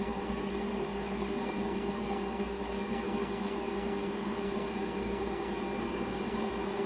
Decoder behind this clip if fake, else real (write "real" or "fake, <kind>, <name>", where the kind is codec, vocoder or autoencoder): fake, codec, SNAC